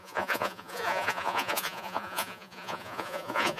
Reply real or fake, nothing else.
fake